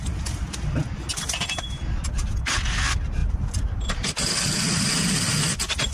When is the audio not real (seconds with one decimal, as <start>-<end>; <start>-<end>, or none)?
1.1-1.8; 3.2-5.2